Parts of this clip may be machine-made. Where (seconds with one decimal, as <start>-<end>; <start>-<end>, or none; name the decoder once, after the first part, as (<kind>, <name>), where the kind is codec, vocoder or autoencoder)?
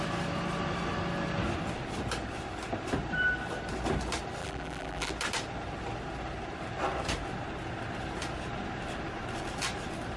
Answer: 4.4-5.1 (vocoder, BigVGAN v2)